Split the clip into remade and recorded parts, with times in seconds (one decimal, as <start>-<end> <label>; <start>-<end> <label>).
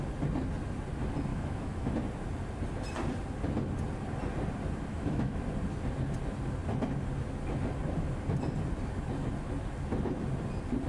0.0-1.3 recorded; 1.3-1.9 remade; 1.9-4.9 recorded; 4.9-5.4 remade; 5.4-10.9 recorded